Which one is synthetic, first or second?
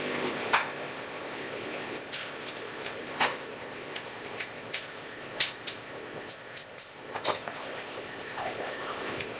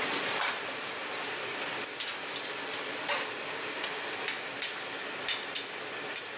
first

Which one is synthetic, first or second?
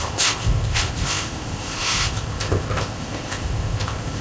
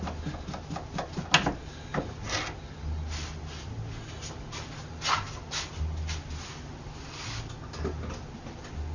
first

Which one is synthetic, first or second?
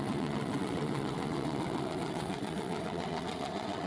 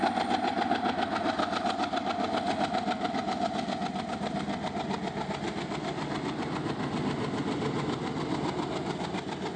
first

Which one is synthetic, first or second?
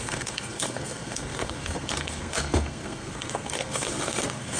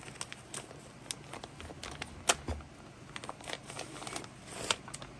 first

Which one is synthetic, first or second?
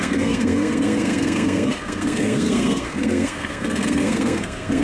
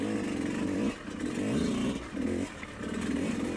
first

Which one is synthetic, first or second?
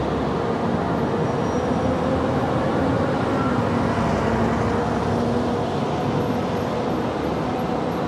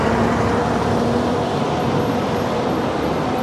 second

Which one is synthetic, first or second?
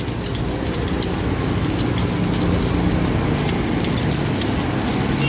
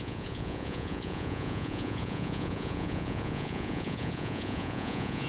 second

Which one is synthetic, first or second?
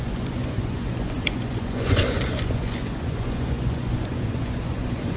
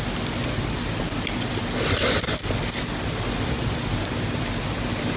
first